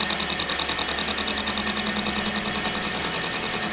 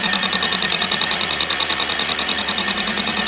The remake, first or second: second